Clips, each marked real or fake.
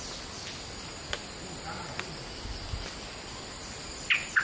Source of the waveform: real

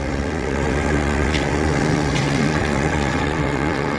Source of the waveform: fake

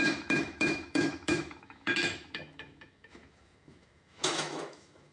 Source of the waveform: fake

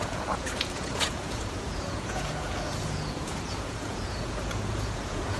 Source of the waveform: fake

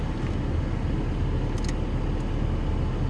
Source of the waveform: real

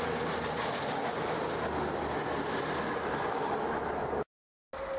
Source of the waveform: real